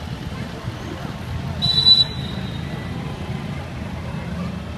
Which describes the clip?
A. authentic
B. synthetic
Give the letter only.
A